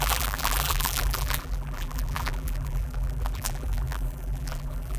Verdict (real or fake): fake